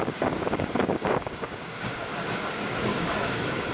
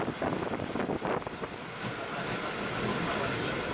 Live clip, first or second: second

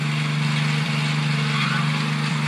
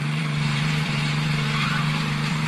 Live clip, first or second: first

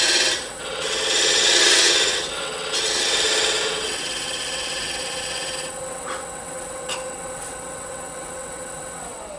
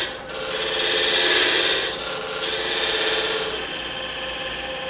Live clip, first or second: second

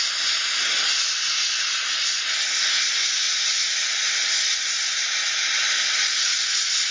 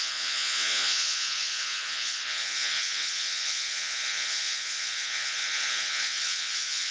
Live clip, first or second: first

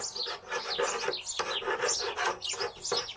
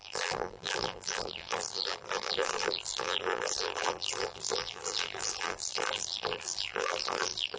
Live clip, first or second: first